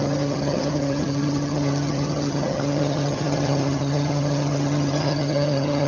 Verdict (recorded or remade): remade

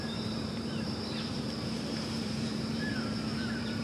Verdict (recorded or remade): remade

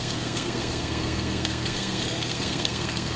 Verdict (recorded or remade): remade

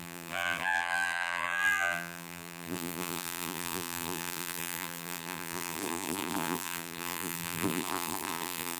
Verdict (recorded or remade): remade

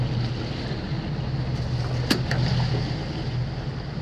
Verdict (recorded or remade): recorded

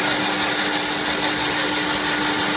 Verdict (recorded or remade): recorded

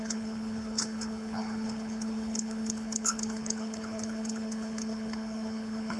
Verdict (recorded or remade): remade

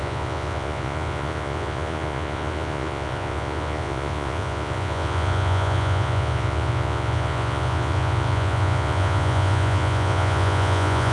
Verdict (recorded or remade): remade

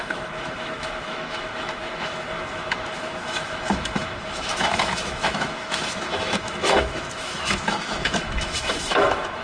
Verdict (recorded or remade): remade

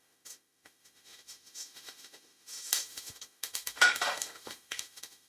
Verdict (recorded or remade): remade